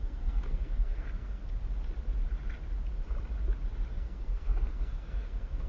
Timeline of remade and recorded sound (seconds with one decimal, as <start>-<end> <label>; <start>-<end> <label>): 0.0-1.4 remade; 1.4-3.9 recorded; 3.9-5.7 remade